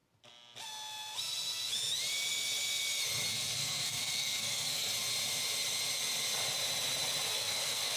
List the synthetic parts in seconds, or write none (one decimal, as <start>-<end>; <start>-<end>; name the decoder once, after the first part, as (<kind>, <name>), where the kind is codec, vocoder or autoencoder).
3.3-4.9 (codec, SNAC); 7.3-8.0

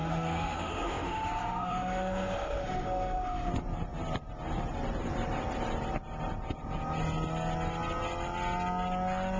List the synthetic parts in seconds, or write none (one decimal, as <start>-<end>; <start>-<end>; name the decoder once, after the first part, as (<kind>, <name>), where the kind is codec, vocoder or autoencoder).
0.0-3.5 (autoencoder, DAC-VAE)